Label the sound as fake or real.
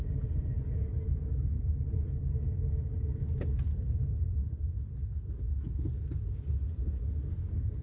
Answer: real